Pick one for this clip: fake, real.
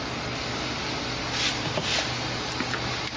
real